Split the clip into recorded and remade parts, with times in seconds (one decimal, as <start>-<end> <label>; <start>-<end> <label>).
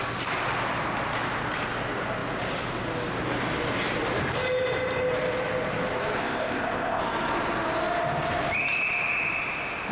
0.0-6.2 recorded; 6.2-7.0 remade; 7.0-9.9 recorded